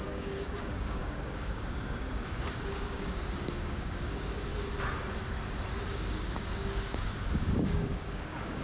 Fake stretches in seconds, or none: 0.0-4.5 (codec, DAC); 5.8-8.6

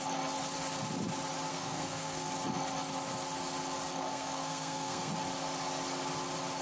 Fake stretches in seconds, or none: 1.5-2.3 (codec, SNAC); 4.0-5.1

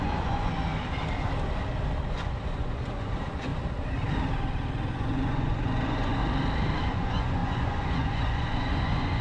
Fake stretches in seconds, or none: 0.0-0.7 (vocoder, Vocos); 2.1-3.5; 4.9-6.2; 6.8-9.2

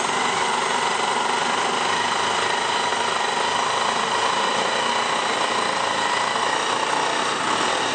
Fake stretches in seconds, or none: none

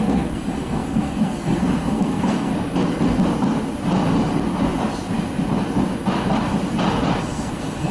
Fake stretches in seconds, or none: 0.0-2.5 (codec, SNAC); 7.2-7.9

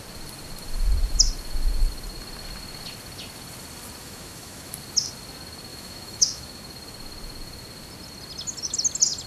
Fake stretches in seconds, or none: 4.0-4.7 (autoencoder, DAC-VAE); 5.7-6.6

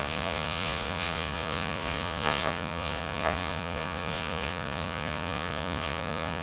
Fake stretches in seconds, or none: 0.0-6.4 (vocoder, Vocos)